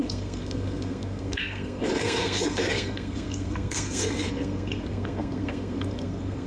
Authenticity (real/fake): fake